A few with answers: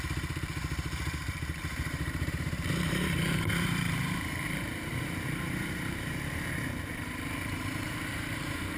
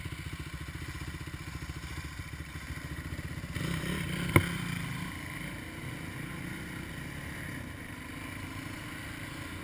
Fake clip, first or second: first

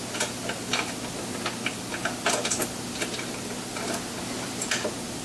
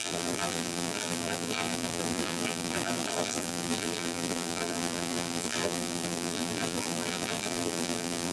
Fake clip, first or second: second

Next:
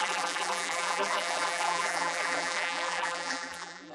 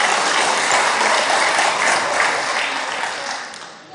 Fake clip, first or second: first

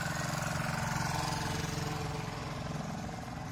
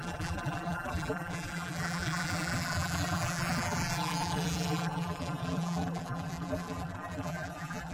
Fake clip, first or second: second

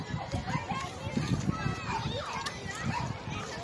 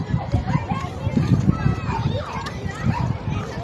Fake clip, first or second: second